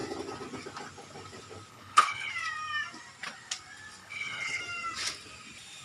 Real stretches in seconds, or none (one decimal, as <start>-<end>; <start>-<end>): 0.0-1.7; 2.3-4.0; 4.6-5.8